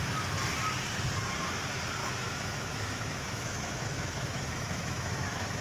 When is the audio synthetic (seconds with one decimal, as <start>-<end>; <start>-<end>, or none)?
2.0-5.6

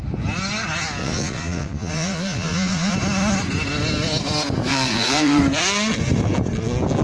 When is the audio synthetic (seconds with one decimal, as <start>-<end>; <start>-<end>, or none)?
1.0-2.9; 4.7-5.4

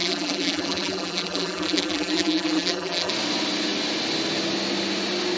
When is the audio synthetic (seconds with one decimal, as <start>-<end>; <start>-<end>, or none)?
0.0-3.1

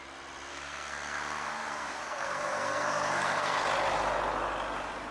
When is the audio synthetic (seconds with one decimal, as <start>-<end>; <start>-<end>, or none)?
0.5-3.6